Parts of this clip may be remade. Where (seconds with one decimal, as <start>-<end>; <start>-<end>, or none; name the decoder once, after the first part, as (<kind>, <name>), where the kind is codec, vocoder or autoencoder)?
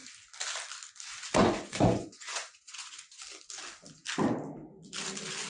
1.4-3.2 (vocoder, Vocos)